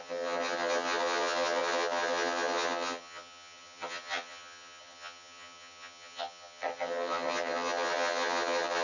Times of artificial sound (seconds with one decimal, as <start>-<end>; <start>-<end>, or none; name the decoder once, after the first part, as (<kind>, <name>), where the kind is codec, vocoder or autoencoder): 0.0-8.8 (vocoder, HiFi-GAN)